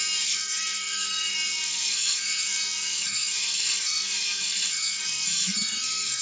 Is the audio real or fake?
fake